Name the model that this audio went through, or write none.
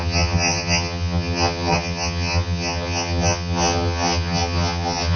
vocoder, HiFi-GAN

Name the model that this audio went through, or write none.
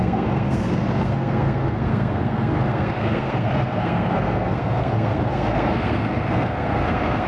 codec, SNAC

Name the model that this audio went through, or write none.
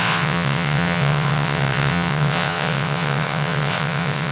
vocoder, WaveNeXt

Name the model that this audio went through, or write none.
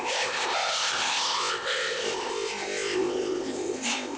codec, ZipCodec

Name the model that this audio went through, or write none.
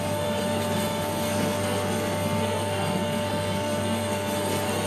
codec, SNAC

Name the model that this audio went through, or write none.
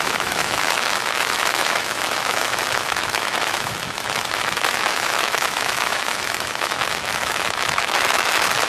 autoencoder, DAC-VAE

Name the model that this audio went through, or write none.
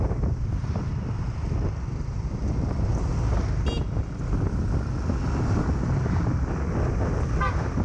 none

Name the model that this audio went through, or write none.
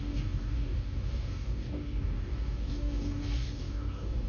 codec, DAC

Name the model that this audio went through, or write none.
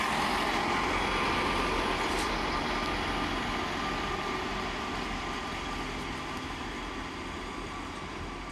none